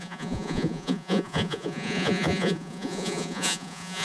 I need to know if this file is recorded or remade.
remade